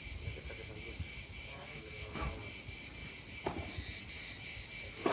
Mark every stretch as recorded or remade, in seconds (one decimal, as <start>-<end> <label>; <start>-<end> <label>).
0.0-1.5 recorded; 1.5-2.3 remade; 2.3-5.1 recorded